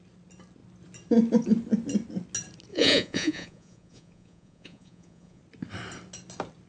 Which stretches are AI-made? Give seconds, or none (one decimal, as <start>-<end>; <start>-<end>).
2.7-5.4